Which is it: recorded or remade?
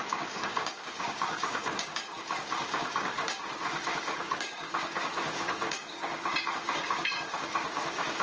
remade